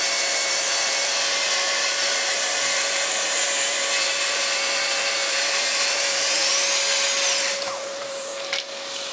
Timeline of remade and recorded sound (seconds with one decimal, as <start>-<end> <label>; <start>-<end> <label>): 0.0-6.5 remade; 6.5-7.4 recorded; 7.4-8.3 remade; 8.3-9.1 recorded